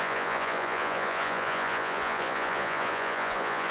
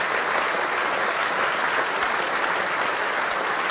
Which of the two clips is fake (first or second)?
first